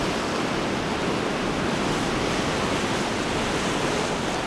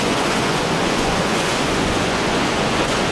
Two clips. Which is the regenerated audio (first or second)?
second